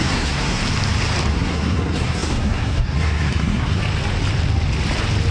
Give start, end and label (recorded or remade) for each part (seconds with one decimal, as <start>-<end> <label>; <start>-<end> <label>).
0.0-0.6 remade; 0.6-1.3 recorded; 1.3-3.8 remade; 3.8-5.3 recorded